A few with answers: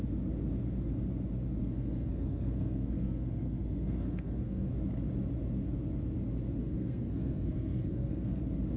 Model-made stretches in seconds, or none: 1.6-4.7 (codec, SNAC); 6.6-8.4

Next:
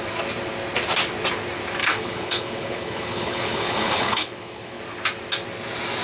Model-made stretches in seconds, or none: 1.8-4.8 (codec, HILCodec)

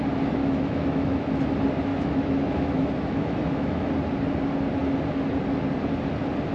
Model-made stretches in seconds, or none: 0.4-1.3 (autoencoder, DAC-VAE); 1.9-3.9

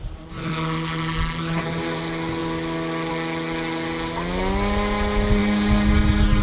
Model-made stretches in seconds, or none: none

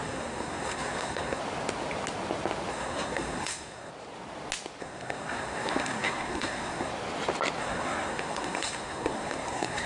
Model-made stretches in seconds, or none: 0.0-1.4 (codec, SNAC); 2.7-3.9; 4.8-6.9; 7.6-9.9